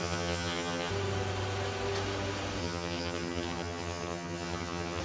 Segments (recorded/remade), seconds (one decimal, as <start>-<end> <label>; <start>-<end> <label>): 0.0-0.9 remade; 0.9-2.6 recorded; 2.6-5.0 remade